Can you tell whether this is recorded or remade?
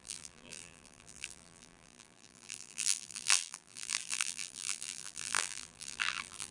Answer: remade